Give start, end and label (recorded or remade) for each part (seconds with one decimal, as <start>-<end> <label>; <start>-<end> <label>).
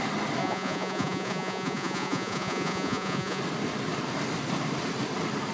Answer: 0.0-0.4 recorded; 0.4-3.4 remade; 3.4-5.5 recorded